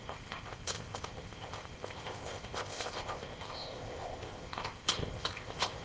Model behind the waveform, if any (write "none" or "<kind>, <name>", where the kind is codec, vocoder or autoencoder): codec, ZipCodec